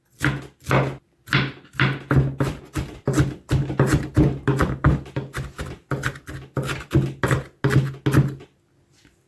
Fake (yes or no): no